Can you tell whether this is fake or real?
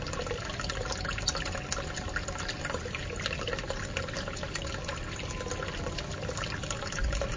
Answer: real